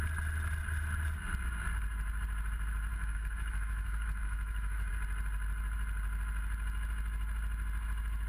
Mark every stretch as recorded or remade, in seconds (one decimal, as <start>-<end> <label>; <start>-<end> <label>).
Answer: 0.0-2.9 recorded; 2.9-4.9 remade; 4.9-8.3 recorded